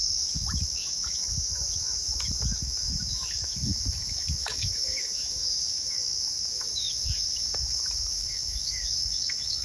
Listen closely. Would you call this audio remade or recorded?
remade